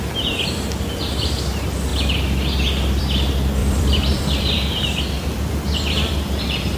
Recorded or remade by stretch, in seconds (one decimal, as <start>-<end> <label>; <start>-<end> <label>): 0.0-3.6 recorded; 3.6-5.0 remade; 5.0-6.8 recorded